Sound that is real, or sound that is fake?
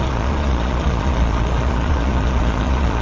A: fake